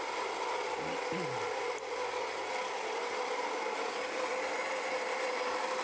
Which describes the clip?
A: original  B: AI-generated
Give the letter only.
A